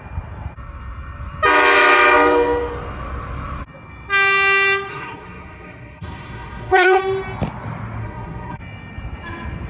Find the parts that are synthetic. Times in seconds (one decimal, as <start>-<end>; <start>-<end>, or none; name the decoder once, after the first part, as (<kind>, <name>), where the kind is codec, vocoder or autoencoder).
4.9-7.0 (codec, SNAC); 8.0-8.6